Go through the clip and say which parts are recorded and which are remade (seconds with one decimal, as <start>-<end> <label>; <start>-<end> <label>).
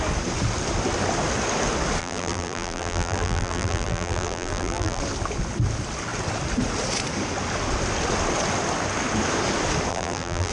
0.0-2.0 recorded; 2.0-5.0 remade; 5.0-9.9 recorded; 9.9-10.5 remade